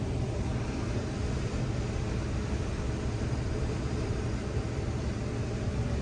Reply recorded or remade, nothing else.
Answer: recorded